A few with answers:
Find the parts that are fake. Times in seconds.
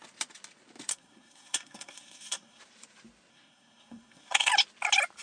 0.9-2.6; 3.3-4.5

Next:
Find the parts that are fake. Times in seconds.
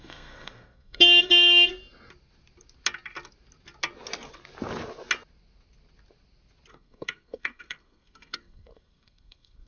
0.0-1.7; 6.7-9.7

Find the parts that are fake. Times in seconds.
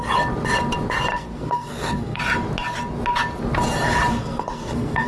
1.1-2.2; 4.1-5.1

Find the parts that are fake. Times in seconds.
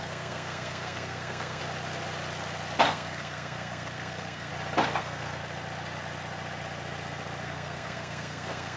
0.0-1.6; 2.9-4.5; 5.0-5.4; 7.4-8.8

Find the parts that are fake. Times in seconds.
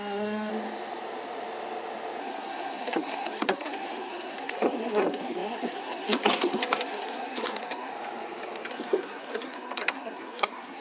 0.0-0.5; 2.2-7.9; 8.7-10.8